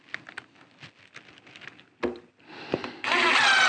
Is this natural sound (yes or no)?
yes